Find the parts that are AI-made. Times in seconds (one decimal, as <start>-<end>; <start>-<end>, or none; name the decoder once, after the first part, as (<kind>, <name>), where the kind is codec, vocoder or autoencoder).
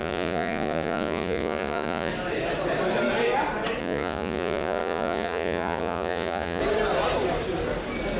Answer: 0.0-2.1 (vocoder, Vocos); 3.8-6.6